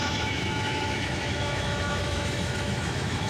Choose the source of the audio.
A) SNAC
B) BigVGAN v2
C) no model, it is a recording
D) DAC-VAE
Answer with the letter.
D